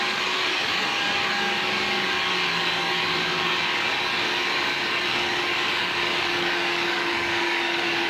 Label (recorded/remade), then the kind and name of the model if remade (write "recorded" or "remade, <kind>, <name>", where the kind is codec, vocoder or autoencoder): remade, codec, DAC